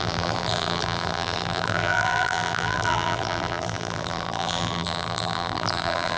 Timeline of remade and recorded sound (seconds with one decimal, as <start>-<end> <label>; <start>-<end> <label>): 0.0-6.2 remade